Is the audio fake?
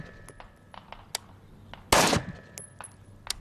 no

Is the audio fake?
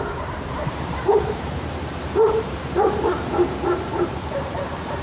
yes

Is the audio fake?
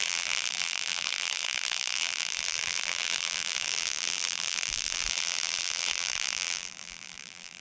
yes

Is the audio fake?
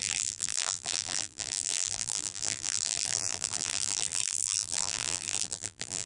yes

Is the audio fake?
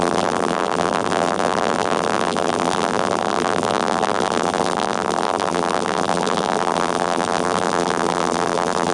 yes